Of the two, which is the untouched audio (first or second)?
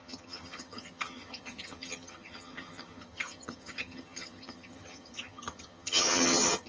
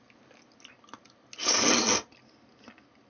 second